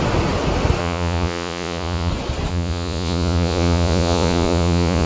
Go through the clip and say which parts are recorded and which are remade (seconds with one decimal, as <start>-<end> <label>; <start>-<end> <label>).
0.0-0.8 recorded; 0.8-2.1 remade; 2.1-2.5 recorded; 2.5-5.1 remade